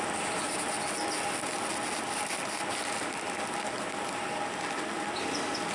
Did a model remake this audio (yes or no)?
no